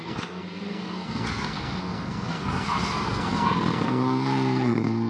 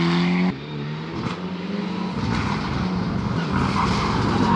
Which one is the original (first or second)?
second